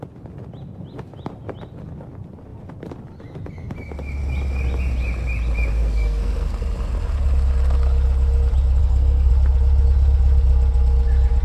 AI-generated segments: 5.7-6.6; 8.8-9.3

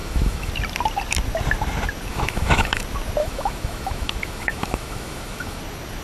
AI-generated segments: 0.0-0.5; 2.1-2.8; 3.2-5.6

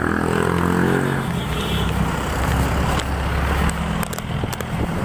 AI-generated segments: 1.4-3.0

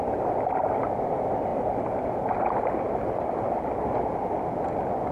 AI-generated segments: none

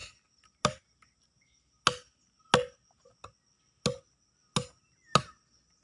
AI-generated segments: none

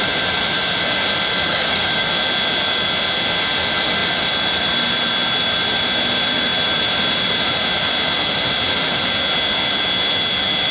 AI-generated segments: 1.5-2.1